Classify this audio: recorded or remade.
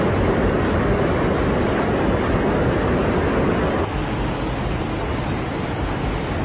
recorded